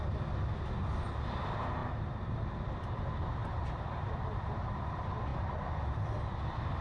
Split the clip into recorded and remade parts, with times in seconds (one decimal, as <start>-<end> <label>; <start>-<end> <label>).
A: 0.0-1.8 recorded; 1.8-2.5 remade; 2.5-3.4 recorded; 3.4-4.7 remade; 4.7-6.8 recorded